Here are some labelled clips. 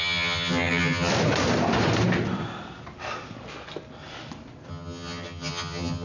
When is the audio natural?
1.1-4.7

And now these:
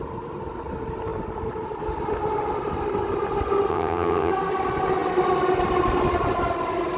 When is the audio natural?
0.0-3.7; 4.3-7.0